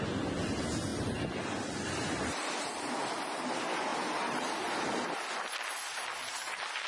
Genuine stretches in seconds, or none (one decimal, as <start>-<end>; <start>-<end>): 0.0-0.9; 2.7-6.9